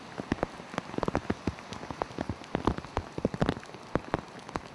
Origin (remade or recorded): recorded